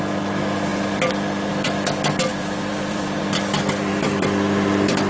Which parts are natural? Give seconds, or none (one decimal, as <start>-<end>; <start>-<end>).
0.0-2.3; 3.2-3.9